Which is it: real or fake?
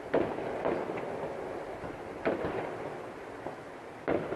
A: real